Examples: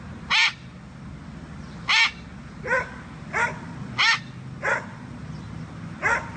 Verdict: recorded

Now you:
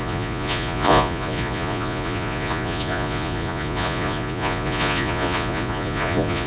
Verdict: remade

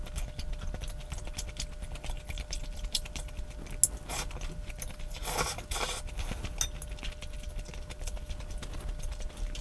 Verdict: recorded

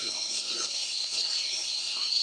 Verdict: remade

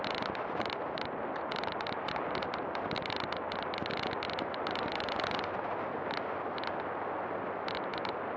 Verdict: recorded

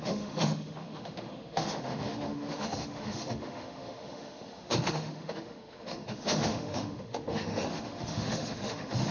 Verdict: remade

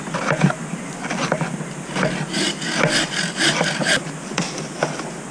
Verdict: recorded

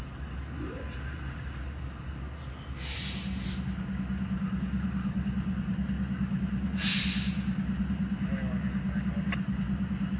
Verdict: recorded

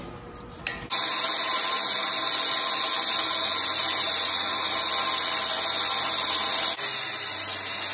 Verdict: recorded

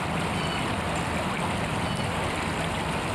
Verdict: recorded